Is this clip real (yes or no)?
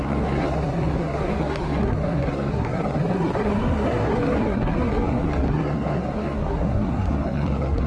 no